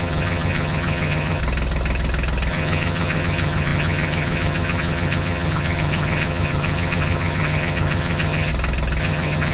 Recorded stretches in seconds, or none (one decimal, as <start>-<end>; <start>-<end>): 1.4-2.5; 8.5-9.0